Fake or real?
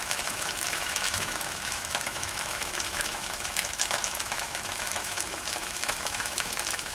fake